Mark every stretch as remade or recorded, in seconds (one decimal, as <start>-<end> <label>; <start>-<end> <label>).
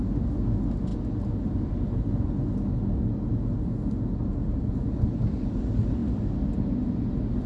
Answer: 0.0-7.5 recorded